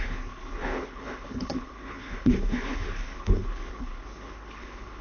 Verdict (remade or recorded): remade